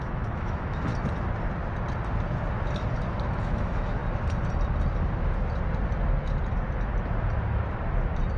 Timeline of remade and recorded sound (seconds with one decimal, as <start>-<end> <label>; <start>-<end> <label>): 0.0-0.9 remade; 0.9-3.4 recorded; 3.4-4.0 remade; 4.0-8.4 recorded

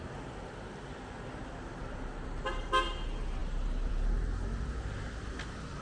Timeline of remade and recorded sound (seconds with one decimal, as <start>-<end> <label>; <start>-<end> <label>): 0.0-5.8 recorded

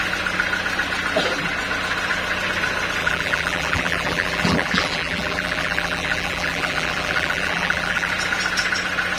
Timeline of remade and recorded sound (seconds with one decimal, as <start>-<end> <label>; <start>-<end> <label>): 0.0-3.0 recorded; 3.0-8.1 remade; 8.1-9.2 recorded

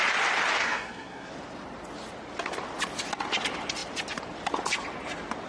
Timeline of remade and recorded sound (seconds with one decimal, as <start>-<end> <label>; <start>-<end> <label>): 0.0-0.6 recorded; 0.6-1.3 remade; 1.3-5.5 recorded